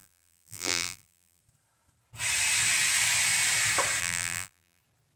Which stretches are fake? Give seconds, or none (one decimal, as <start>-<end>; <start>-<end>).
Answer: 0.0-1.4; 4.0-4.8